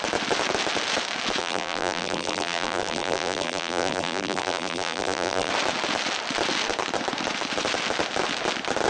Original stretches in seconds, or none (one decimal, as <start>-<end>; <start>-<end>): 0.0-1.4; 5.5-8.9